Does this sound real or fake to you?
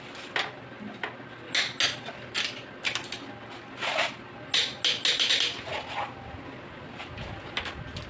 real